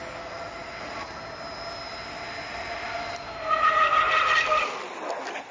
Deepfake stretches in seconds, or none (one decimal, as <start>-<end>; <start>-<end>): none

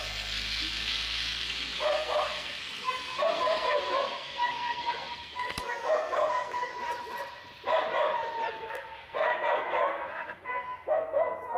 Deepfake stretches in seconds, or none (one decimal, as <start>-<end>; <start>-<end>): 0.0-6.7; 8.5-11.6

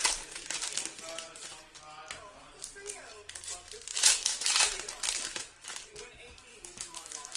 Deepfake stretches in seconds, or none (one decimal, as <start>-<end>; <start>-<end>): 3.9-4.5; 6.5-7.4

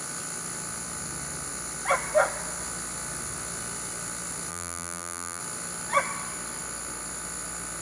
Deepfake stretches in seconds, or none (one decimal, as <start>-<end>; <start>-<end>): 4.5-5.4

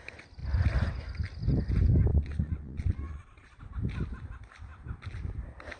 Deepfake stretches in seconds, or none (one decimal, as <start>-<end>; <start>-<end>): 2.1-3.6